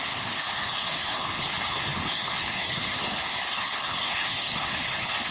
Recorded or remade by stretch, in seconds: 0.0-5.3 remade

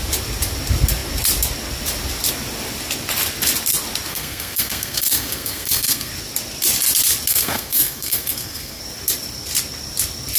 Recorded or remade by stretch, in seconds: 0.0-4.1 recorded; 4.1-6.1 remade; 6.1-7.3 recorded; 7.3-8.8 remade; 8.8-10.4 recorded

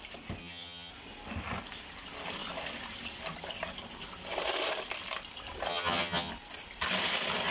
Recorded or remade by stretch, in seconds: 0.0-0.4 recorded; 0.4-0.9 remade; 0.9-5.7 recorded; 5.7-6.3 remade; 6.3-7.5 recorded

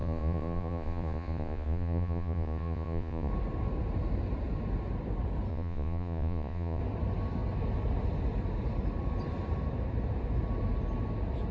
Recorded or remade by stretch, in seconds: 0.0-3.3 remade; 3.3-5.5 recorded; 5.5-6.8 remade; 6.8-11.5 recorded

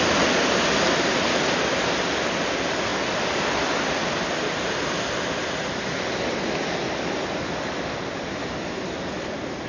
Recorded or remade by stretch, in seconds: 0.0-9.7 recorded

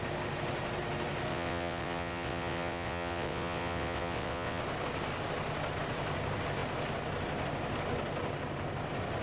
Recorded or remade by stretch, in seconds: 0.0-1.3 recorded; 1.3-4.6 remade; 4.6-9.2 recorded